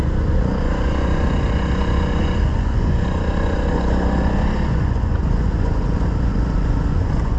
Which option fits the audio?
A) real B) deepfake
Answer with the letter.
B